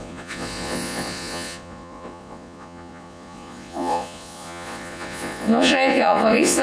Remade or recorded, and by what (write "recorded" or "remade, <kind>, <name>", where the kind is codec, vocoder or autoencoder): remade, vocoder, Vocos